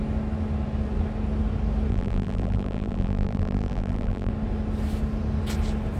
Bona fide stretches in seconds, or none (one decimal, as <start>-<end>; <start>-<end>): 0.0-1.9; 4.3-6.0